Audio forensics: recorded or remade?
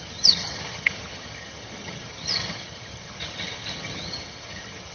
remade